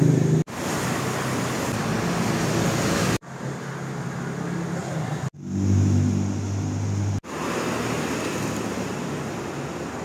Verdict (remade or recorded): recorded